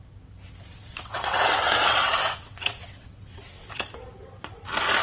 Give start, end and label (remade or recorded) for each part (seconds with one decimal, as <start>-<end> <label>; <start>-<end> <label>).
0.0-0.8 recorded; 0.8-3.7 remade; 3.7-5.0 recorded